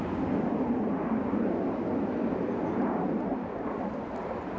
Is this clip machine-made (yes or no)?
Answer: no